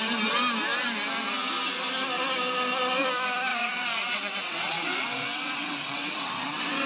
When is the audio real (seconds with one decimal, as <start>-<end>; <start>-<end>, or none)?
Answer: 0.0-3.5